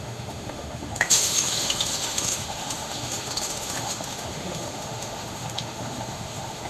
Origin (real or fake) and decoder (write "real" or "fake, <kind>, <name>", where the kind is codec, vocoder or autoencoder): fake, autoencoder, DAC-VAE